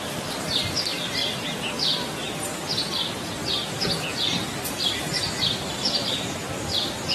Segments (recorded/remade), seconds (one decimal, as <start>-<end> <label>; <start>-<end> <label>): 0.0-4.1 recorded; 4.1-4.7 remade; 4.7-7.1 recorded